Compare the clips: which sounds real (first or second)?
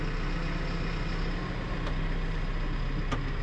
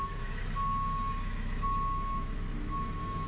first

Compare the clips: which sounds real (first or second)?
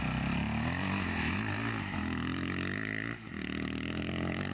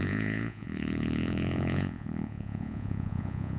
first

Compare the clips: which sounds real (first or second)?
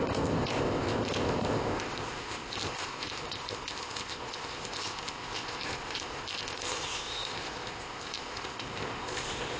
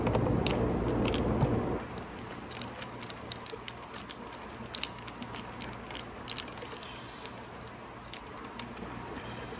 second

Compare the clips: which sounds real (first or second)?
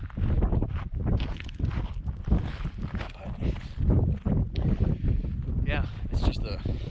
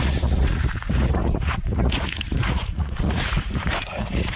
first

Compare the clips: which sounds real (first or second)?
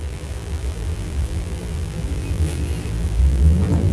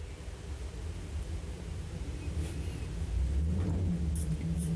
second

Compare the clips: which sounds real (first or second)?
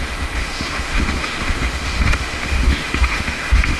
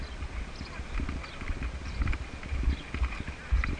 second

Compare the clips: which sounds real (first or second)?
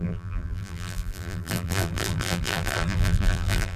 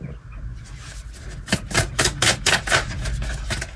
second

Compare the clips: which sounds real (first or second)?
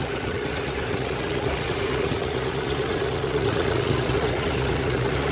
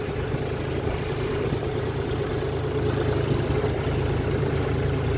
second